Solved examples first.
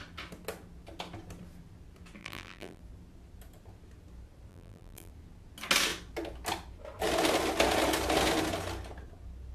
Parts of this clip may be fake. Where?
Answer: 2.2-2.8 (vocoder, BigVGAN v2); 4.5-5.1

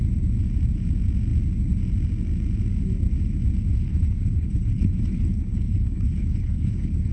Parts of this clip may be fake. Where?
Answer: 3.7-7.1 (codec, HILCodec)

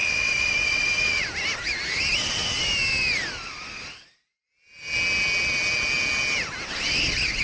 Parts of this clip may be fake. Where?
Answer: none

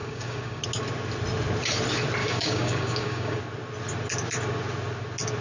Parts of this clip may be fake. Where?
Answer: 0.0-0.6 (codec, DAC); 2.2-3.4

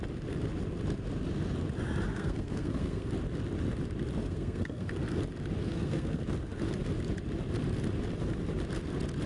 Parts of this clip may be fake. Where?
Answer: 2.1-3.1 (codec, SNAC); 4.2-4.9; 5.6-6.2

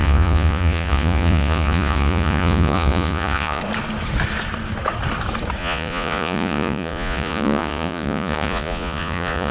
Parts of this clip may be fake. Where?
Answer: 0.0-3.6 (vocoder, Vocos); 5.6-9.5

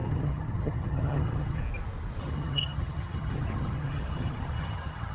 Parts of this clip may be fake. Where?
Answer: 0.0-1.6 (vocoder, HiFi-GAN); 2.2-5.1

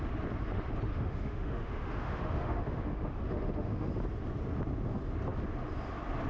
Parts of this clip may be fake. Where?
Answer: 0.9-3.9 (autoencoder, DAC-VAE)